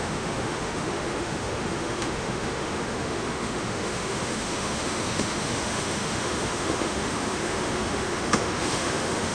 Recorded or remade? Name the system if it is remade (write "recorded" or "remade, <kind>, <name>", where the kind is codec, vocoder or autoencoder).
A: remade, autoencoder, DAC-VAE